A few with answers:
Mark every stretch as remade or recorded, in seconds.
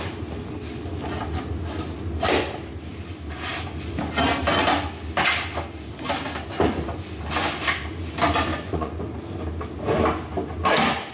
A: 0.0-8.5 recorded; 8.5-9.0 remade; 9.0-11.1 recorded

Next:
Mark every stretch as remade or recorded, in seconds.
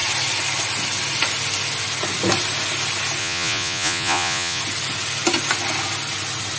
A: 0.0-3.2 recorded; 3.2-4.6 remade; 4.6-6.6 recorded